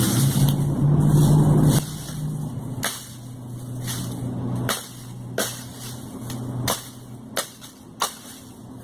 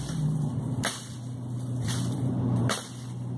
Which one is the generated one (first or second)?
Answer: second